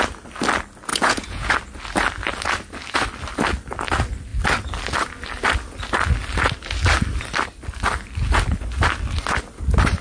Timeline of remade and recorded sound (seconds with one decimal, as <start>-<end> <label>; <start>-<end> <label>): 0.0-0.9 recorded; 0.9-1.5 remade; 1.5-10.0 recorded